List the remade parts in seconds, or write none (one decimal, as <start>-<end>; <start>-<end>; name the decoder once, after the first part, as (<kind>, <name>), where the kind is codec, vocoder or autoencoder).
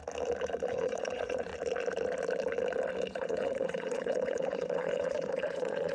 0.7-1.5 (vocoder, Vocos); 3.1-5.9